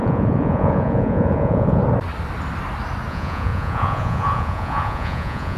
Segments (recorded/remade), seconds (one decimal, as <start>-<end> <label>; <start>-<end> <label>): 0.0-1.8 remade; 1.8-3.1 recorded; 3.1-5.6 remade